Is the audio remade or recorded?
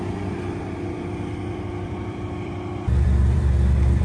remade